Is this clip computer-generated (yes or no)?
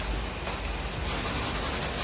no